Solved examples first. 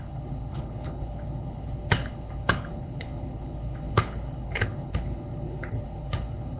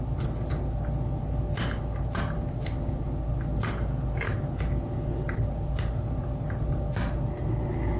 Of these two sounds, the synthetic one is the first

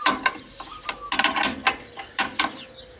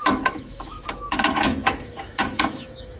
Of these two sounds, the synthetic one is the second